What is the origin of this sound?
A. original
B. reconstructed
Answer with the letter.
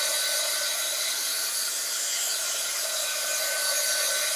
A